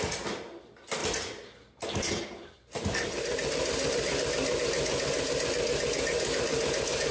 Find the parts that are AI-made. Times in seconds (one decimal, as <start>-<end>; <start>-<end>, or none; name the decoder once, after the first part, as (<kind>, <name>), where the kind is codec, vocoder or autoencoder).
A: none